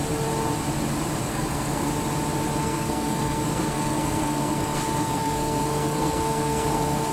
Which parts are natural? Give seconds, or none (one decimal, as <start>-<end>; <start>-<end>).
0.0-1.3; 1.9-2.6